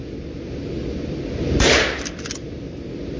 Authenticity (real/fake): real